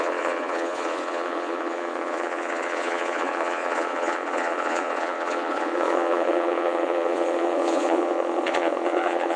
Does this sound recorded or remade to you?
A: remade